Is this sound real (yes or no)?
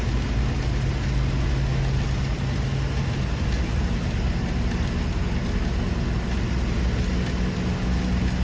yes